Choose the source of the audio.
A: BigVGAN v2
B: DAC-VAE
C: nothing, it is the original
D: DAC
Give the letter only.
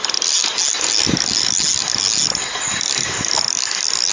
C